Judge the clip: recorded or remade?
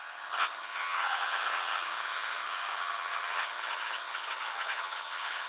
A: remade